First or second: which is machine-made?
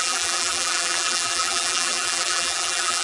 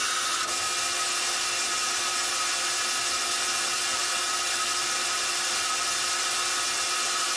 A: first